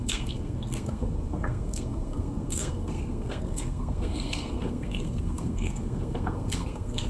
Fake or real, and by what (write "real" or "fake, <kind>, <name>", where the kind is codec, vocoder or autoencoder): fake, codec, SNAC